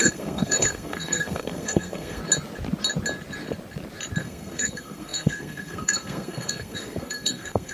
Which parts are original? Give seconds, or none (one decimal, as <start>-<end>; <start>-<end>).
2.2-4.2